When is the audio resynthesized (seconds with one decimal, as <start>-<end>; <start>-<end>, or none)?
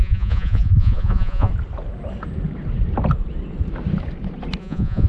0.0-1.5; 4.6-5.1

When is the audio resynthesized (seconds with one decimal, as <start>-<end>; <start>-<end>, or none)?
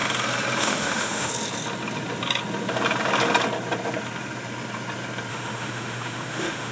0.6-1.3; 5.3-6.7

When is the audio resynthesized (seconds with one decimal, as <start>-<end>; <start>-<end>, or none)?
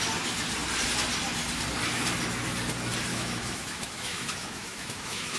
3.1-5.4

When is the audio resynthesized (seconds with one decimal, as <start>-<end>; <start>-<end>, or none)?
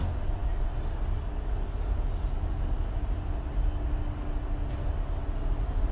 none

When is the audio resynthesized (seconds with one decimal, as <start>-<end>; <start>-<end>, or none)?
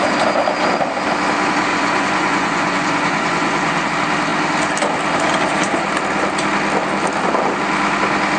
1.7-3.9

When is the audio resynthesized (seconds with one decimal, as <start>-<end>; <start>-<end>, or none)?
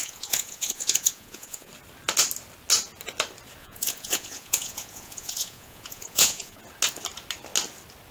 0.0-1.7; 3.6-6.6